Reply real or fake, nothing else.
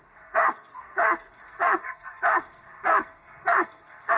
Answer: fake